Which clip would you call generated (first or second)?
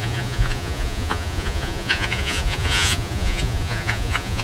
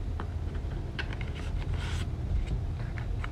first